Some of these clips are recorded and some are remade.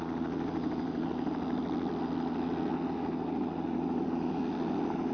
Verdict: recorded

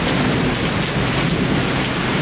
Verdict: recorded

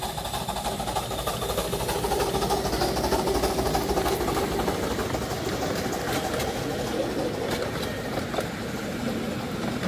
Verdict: recorded